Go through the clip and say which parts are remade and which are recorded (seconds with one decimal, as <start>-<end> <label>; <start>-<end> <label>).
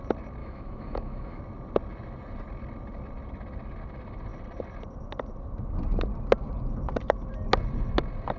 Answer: 0.0-0.4 recorded; 0.4-1.4 remade; 1.4-8.4 recorded